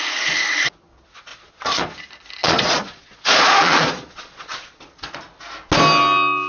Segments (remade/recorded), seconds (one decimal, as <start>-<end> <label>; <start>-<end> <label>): 0.0-1.3 recorded; 1.3-1.8 remade; 1.8-2.4 recorded; 2.4-5.2 remade; 5.2-6.5 recorded